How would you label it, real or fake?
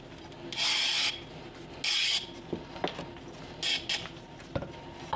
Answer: real